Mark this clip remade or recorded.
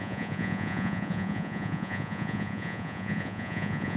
remade